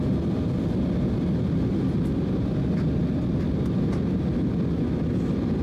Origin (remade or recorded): recorded